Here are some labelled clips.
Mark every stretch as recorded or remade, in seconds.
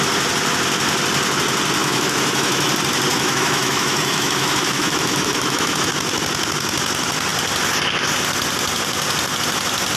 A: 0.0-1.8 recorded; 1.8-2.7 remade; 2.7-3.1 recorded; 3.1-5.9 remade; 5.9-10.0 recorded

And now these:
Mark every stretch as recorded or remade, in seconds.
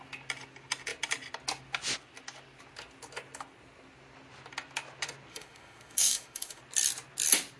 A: 0.0-5.3 recorded; 5.3-6.6 remade; 6.6-7.6 recorded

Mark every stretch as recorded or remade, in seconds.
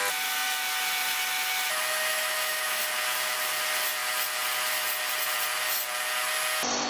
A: 0.0-2.1 recorded; 2.1-2.8 remade; 2.8-6.9 recorded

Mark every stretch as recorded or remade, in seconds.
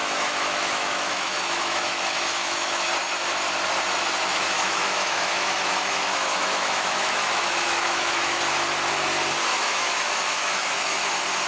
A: 0.0-2.9 remade; 2.9-4.3 recorded; 4.3-8.4 remade; 8.4-9.5 recorded; 9.5-11.0 remade; 11.0-11.5 recorded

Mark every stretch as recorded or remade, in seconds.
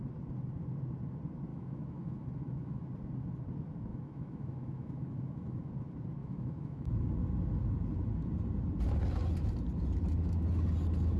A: 0.0-1.5 recorded; 1.5-2.8 remade; 2.8-3.9 recorded; 3.9-5.7 remade; 5.7-6.2 recorded; 6.2-6.9 remade; 6.9-11.2 recorded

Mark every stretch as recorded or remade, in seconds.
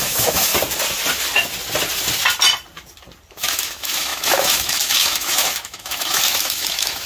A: 0.0-0.5 remade; 0.5-3.3 recorded; 3.3-7.1 remade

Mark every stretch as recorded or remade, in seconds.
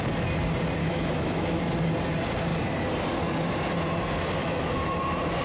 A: 0.0-0.8 recorded; 0.8-1.6 remade; 1.6-4.4 recorded; 4.4-5.0 remade; 5.0-5.4 recorded